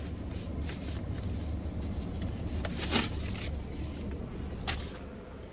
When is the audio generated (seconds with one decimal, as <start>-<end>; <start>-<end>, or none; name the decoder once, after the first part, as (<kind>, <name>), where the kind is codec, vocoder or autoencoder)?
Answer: none